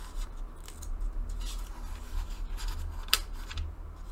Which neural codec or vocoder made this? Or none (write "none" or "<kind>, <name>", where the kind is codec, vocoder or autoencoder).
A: none